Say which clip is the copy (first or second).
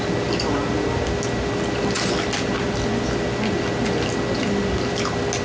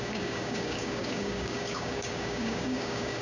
second